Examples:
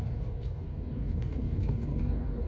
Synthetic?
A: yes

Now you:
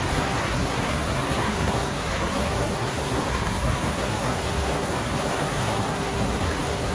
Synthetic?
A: yes